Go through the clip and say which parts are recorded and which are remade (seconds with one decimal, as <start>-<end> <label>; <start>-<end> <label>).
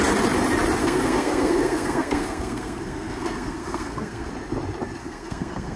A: 0.0-0.8 recorded; 0.8-4.3 remade; 4.3-5.0 recorded; 5.0-5.8 remade